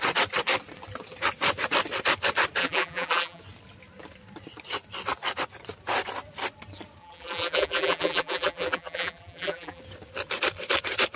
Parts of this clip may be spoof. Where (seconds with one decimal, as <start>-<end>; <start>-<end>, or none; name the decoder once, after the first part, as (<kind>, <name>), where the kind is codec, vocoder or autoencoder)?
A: 2.6-3.4 (vocoder, BigVGAN v2); 7.0-9.8